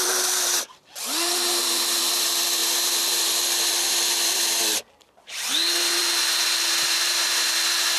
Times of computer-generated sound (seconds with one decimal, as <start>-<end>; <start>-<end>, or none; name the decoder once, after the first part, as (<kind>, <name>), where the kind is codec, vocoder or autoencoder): 0.0-6.0 (vocoder, BigVGAN v2); 6.7-8.0